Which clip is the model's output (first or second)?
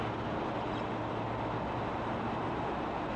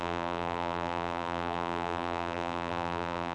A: second